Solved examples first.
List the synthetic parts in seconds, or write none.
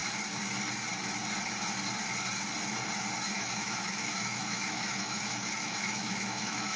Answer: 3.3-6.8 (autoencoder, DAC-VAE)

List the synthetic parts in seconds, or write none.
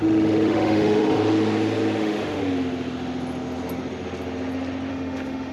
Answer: 0.0-1.2 (autoencoder, DAC-VAE); 2.0-2.4; 4.9-5.5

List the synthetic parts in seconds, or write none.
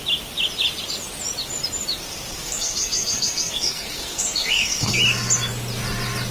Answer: 2.4-5.0 (codec, SNAC)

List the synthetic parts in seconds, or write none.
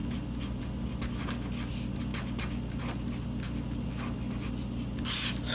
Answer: none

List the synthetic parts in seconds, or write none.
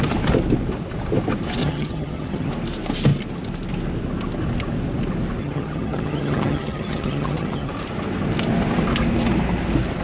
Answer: 1.6-2.5 (vocoder, HiFi-GAN); 5.4-7.7